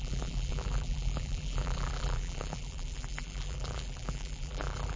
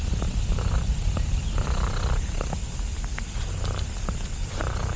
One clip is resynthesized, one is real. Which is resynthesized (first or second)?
first